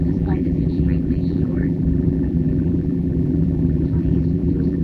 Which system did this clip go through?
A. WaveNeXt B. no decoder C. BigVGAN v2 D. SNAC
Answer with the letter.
C